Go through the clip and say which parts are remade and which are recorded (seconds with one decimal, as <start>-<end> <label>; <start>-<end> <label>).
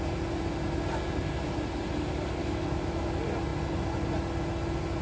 0.0-2.4 recorded; 2.4-3.1 remade; 3.1-5.0 recorded